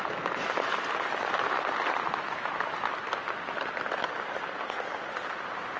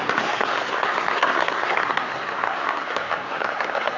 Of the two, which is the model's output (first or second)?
second